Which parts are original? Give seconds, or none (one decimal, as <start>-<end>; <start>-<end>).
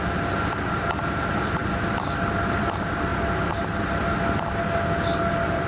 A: 0.0-5.7